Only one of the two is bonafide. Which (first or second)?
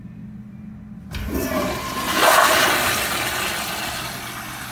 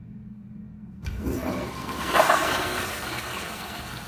first